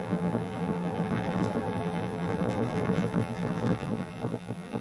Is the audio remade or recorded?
remade